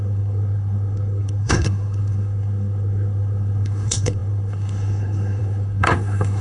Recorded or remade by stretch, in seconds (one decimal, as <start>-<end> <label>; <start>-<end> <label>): 0.0-6.4 remade